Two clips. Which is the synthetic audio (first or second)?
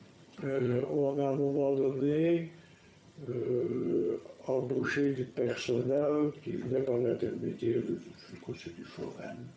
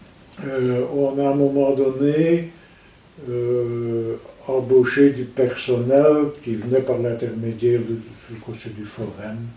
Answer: first